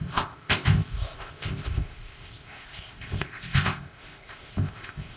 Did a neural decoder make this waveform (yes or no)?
yes